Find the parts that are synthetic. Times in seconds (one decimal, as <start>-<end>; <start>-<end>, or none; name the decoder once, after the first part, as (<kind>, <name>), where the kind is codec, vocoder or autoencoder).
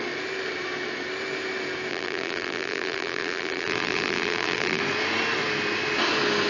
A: 1.9-4.8 (vocoder, BigVGAN v2)